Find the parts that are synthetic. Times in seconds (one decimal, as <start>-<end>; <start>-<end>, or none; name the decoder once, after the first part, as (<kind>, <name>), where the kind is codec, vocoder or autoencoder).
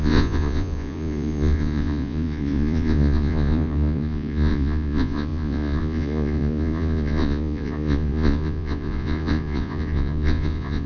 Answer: 0.0-10.9 (vocoder, Vocos)